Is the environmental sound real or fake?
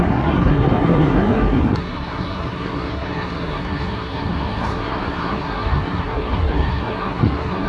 fake